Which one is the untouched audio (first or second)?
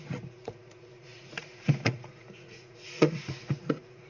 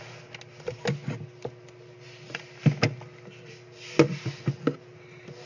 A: second